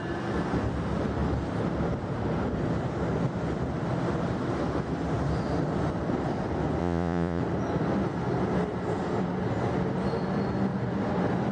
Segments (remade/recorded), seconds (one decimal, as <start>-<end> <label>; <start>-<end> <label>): 0.0-6.8 recorded; 6.8-7.4 remade; 7.4-11.5 recorded